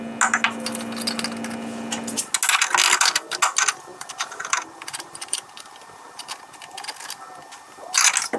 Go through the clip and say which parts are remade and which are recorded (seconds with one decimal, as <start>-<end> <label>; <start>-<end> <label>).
0.0-3.9 recorded; 3.9-6.3 remade; 6.3-8.4 recorded